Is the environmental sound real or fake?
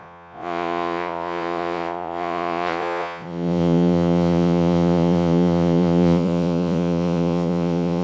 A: fake